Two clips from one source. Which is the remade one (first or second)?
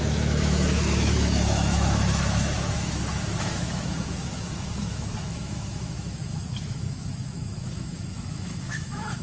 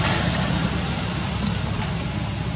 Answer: first